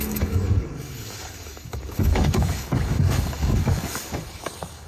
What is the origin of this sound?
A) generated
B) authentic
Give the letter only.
A